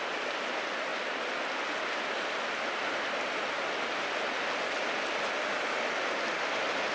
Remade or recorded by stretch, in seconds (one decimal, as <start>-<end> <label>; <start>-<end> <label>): 0.0-6.9 recorded